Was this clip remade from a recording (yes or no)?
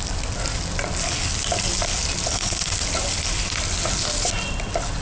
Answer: no